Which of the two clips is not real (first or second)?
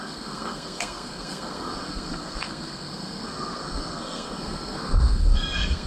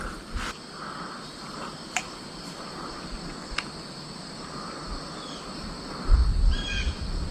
first